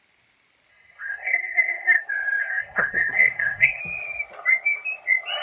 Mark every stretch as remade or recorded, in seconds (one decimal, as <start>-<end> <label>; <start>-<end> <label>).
0.0-0.7 recorded; 0.7-2.0 remade; 2.0-2.4 recorded; 2.4-3.8 remade; 3.8-5.4 recorded